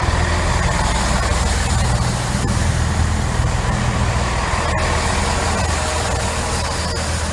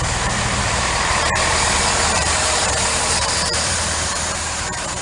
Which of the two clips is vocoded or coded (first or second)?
second